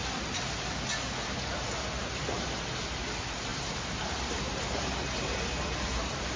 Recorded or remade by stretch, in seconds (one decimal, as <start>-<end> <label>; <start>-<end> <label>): 0.0-3.5 recorded; 3.5-6.4 remade